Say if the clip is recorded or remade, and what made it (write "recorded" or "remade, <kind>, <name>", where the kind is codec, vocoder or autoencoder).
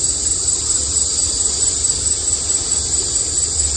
recorded